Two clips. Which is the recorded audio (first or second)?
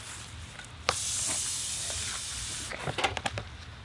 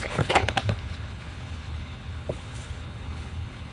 first